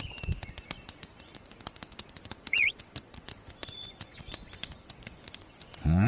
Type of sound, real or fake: fake